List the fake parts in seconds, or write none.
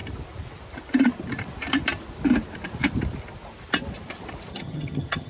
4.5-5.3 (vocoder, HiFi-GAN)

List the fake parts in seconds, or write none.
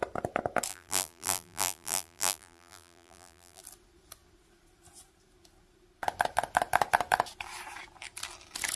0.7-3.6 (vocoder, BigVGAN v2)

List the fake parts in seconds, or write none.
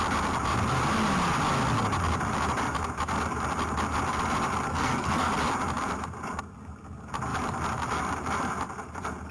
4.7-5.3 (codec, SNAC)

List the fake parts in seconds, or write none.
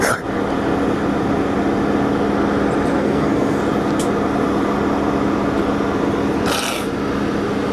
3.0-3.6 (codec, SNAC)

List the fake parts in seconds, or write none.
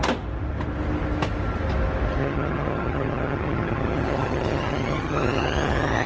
2.2-6.1 (vocoder, HiFi-GAN)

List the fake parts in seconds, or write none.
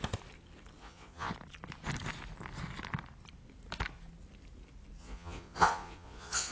0.8-1.3 (vocoder, Vocos); 5.0-6.5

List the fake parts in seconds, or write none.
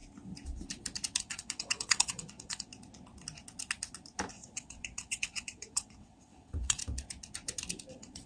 1.2-2.7 (vocoder, WaveNeXt); 4.3-6.8; 7.9-8.3